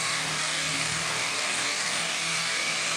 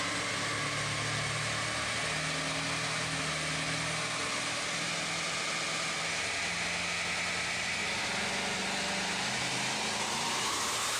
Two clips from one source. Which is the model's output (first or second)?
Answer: first